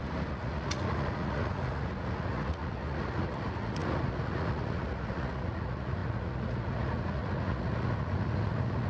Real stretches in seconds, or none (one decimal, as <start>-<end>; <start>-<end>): none